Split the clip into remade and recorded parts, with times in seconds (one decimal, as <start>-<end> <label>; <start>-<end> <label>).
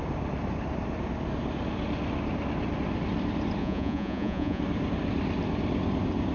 0.0-3.6 recorded; 3.6-4.6 remade; 4.6-6.3 recorded